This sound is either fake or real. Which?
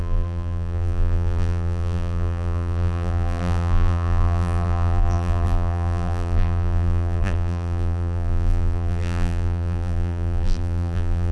fake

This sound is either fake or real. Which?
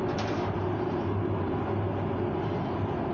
real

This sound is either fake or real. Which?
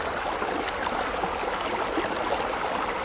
real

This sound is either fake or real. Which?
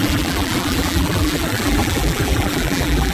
fake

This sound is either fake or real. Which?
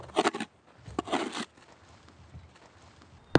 real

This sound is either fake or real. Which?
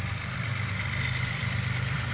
fake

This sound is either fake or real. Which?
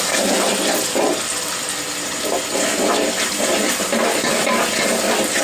real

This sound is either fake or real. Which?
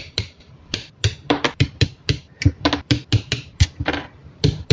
fake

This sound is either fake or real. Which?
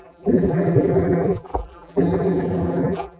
fake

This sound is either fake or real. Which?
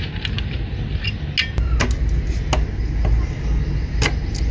real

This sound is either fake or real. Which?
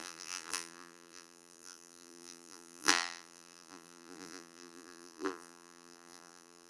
fake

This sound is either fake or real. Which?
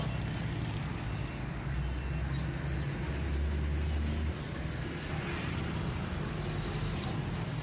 real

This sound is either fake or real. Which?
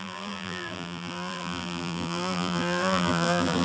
fake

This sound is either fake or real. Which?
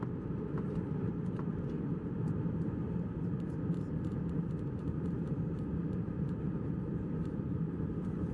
fake